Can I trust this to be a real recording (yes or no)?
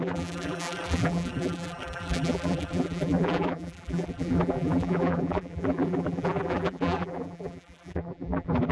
no